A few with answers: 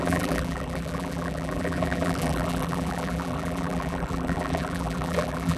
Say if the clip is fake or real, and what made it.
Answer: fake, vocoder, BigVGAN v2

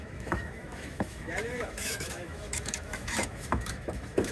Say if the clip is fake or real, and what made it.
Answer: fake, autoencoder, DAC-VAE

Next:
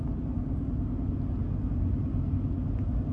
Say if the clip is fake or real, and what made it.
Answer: real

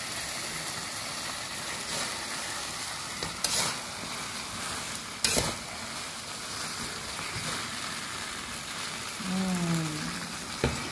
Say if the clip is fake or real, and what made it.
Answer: real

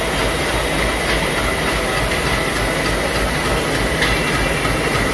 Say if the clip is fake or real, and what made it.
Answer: real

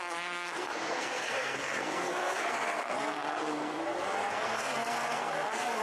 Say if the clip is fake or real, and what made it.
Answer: fake, codec, SNAC